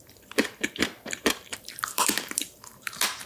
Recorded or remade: remade